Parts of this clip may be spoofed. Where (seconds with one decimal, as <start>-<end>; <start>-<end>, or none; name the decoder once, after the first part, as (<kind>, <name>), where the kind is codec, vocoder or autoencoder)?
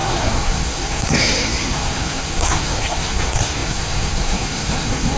0.0-5.2 (codec, SNAC)